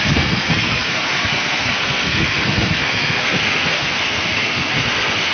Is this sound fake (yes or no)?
yes